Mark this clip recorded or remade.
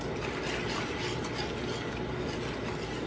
recorded